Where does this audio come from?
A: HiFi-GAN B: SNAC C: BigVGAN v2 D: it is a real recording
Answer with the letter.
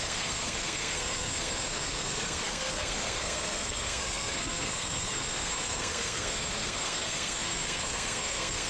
B